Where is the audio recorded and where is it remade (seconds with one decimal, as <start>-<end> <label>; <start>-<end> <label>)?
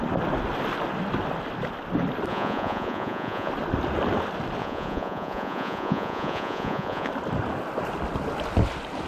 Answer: 0.0-2.3 recorded; 2.3-3.5 remade; 3.5-4.6 recorded; 4.6-7.1 remade; 7.1-9.1 recorded